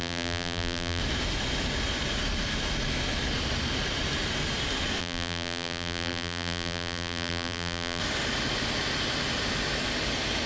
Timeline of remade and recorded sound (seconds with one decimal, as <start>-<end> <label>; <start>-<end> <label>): 0.0-1.0 remade; 1.0-5.0 recorded; 5.0-8.0 remade; 8.0-10.5 recorded